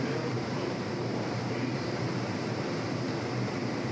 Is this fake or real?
fake